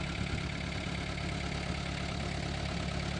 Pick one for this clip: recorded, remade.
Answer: recorded